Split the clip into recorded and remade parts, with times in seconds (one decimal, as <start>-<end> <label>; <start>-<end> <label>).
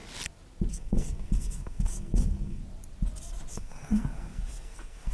0.0-0.7 recorded; 0.7-2.6 remade; 2.6-3.5 recorded; 3.5-5.1 remade